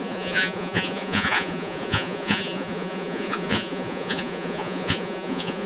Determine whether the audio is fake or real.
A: fake